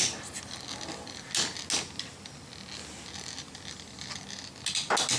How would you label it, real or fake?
real